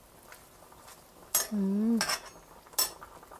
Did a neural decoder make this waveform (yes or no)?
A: no